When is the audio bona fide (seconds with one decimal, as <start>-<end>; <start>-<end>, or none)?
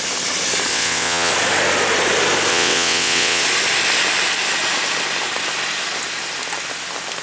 0.0-0.7; 1.3-2.5; 3.4-7.2